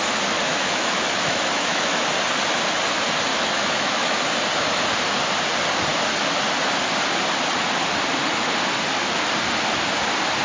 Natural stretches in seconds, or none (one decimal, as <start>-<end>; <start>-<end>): 0.0-0.5; 2.0-3.3; 4.2-10.4